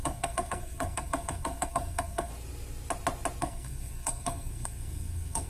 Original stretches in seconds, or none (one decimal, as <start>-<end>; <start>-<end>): 2.3-3.4